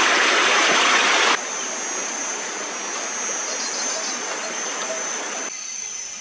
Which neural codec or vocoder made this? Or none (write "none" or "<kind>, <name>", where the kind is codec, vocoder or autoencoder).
none